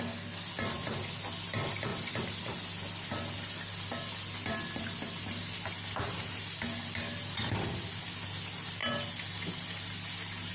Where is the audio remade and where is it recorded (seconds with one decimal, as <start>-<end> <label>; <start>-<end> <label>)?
0.0-10.5 recorded